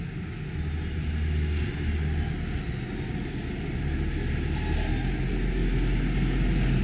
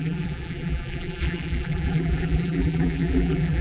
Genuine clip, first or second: first